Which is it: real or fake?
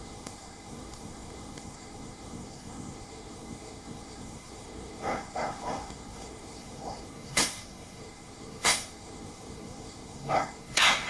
fake